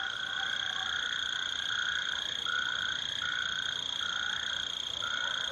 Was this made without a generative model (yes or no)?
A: yes